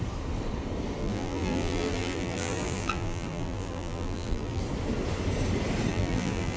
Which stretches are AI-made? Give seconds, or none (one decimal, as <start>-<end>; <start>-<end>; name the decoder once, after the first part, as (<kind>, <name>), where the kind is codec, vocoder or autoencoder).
1.0-4.6 (vocoder, BigVGAN v2); 5.9-6.6